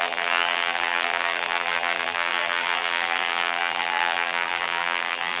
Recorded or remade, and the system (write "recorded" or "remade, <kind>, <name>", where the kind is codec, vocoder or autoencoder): remade, vocoder, BigVGAN v2